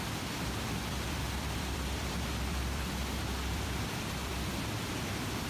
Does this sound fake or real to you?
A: fake